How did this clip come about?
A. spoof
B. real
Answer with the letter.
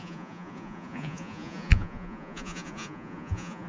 A